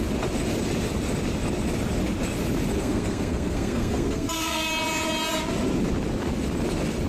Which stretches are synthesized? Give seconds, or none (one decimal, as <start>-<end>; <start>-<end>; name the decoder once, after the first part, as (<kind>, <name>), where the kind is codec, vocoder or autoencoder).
2.8-4.7 (codec, SNAC)